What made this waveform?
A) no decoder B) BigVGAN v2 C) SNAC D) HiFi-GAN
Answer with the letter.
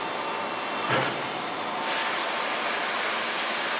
A